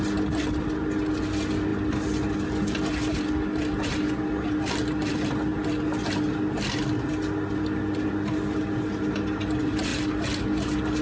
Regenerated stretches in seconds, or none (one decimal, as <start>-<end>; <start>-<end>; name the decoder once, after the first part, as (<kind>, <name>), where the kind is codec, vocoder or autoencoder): none